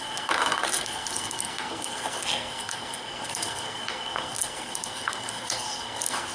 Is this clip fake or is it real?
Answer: fake